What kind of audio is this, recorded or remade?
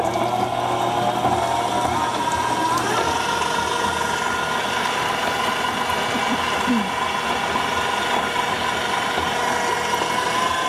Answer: recorded